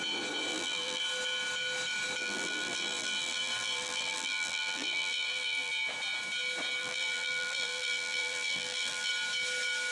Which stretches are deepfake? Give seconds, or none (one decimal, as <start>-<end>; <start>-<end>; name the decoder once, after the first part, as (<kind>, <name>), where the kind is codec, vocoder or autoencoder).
0.5-1.0 (vocoder, BigVGAN v2); 2.2-5.7; 6.8-9.1